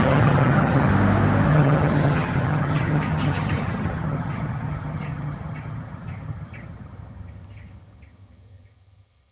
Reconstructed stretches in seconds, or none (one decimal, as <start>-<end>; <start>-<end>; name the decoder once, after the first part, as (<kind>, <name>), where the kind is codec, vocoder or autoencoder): 0.0-0.9 (vocoder, HiFi-GAN); 1.5-9.3